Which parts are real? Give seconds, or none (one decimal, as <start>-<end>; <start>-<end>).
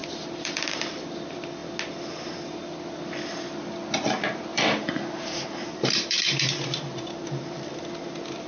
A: 1.1-4.5; 7.3-8.5